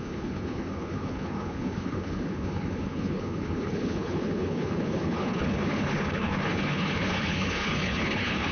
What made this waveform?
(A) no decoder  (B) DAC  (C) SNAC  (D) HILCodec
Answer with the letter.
D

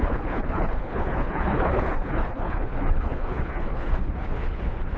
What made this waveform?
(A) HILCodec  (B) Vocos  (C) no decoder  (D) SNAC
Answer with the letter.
A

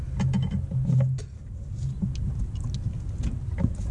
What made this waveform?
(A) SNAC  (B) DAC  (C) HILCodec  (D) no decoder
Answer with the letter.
D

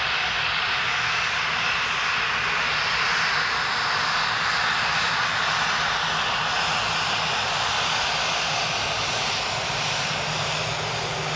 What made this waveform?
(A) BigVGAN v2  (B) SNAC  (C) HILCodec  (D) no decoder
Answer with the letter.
D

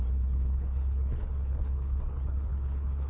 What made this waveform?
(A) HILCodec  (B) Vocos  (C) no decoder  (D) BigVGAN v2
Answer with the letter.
A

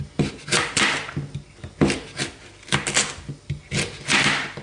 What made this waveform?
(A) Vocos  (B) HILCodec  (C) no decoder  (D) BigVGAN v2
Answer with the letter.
C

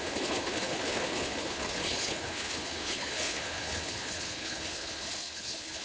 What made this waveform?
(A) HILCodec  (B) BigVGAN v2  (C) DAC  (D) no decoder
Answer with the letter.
A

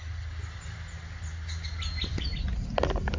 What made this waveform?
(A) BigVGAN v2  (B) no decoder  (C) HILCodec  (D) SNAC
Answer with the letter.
B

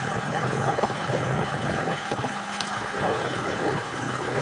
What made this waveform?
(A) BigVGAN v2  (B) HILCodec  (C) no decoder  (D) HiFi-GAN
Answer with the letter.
B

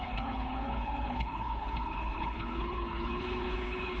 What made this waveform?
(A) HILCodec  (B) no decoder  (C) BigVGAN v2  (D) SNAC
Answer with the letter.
A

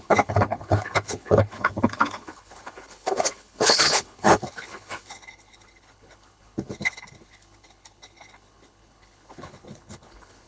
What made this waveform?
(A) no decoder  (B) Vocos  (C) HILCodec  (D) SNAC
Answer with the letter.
C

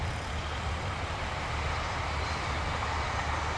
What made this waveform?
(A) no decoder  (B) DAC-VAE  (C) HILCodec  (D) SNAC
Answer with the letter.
A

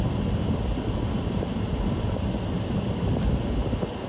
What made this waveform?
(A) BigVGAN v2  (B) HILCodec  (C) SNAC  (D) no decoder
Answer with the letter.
D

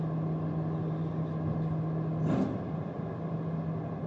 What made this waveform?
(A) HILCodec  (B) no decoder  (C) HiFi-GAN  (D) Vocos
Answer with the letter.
B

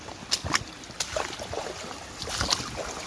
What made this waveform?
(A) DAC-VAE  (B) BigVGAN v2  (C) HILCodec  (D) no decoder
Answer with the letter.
D